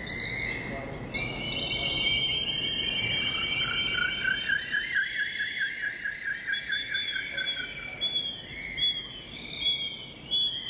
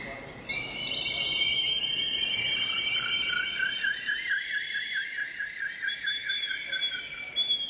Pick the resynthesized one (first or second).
second